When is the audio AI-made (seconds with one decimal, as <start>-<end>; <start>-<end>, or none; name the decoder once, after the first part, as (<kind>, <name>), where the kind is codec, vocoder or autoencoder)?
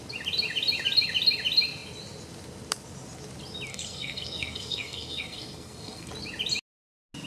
3.7-6.1 (codec, SNAC)